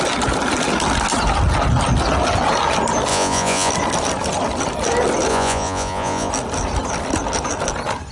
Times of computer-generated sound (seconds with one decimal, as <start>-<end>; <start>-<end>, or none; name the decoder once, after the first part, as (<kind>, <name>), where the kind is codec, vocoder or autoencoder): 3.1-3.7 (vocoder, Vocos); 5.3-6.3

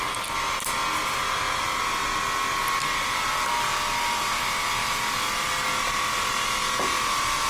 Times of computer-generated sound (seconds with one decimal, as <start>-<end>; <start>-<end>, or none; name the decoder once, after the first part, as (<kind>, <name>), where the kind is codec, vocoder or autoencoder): none

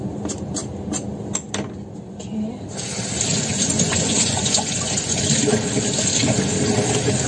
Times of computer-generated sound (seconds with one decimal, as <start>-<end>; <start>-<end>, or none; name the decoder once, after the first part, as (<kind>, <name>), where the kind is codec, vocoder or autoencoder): 3.3-5.2 (vocoder, Vocos)

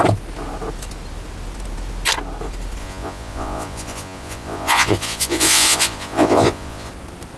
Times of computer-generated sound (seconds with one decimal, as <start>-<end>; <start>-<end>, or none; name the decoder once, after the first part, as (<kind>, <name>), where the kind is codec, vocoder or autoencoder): 2.8-6.9 (vocoder, Vocos)